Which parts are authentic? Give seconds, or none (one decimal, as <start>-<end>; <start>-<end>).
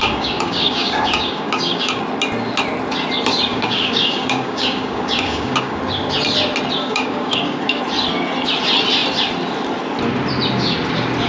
2.0-3.5; 5.8-6.8; 7.8-11.3